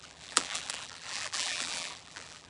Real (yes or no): no